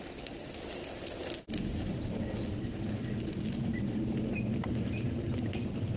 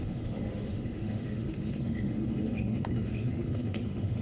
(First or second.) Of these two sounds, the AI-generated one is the second